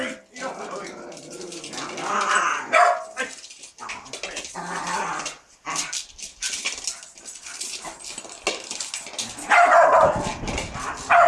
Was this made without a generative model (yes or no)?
yes